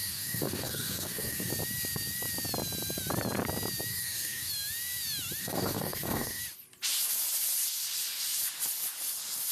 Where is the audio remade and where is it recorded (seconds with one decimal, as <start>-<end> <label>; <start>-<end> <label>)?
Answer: 0.0-1.5 remade; 1.5-3.9 recorded; 3.9-4.5 remade; 4.5-5.4 recorded; 5.4-6.4 remade; 6.4-9.5 recorded